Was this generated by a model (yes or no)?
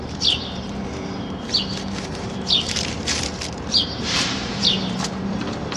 yes